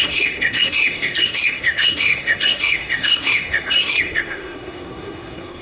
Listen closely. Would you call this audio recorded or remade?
remade